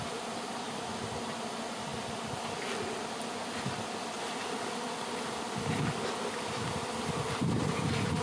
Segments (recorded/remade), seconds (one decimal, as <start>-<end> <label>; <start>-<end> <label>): 0.0-8.2 recorded